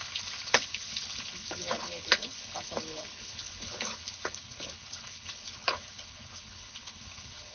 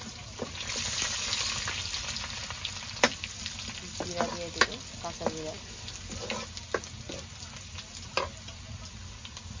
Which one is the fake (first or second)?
first